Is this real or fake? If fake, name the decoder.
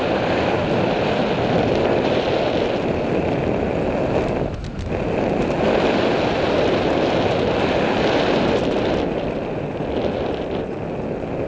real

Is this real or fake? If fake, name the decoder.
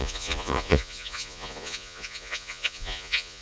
fake, vocoder, Vocos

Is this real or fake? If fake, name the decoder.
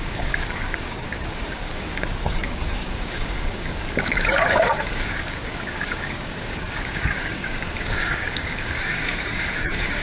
fake, codec, DAC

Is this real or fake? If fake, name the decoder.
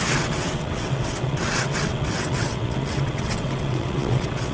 fake, vocoder, WaveNeXt